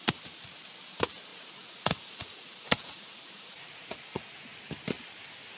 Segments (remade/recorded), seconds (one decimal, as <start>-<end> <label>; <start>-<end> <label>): 0.0-1.3 recorded; 1.3-4.3 remade; 4.3-5.6 recorded